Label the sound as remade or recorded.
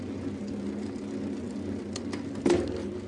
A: recorded